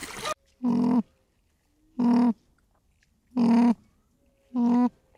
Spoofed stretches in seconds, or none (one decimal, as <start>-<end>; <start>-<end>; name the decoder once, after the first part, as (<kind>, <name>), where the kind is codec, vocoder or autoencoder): none